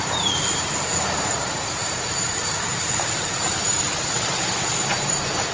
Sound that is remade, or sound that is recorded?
remade